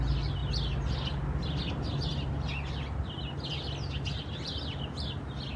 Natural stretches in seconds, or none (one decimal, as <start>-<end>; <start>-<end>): 0.0-5.6